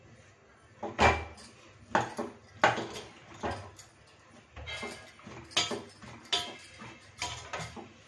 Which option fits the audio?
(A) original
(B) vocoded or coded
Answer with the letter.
A